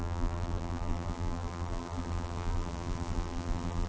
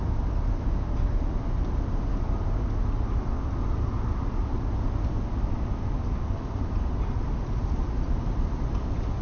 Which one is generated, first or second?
first